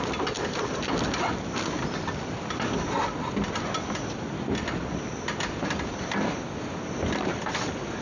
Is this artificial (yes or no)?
yes